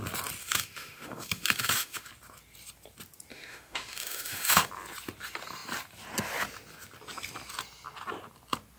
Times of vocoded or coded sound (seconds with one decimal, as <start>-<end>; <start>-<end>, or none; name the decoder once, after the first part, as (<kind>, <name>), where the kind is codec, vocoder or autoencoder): 0.4-2.1 (autoencoder, DAC-VAE); 3.3-4.7